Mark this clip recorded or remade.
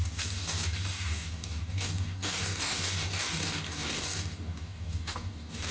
remade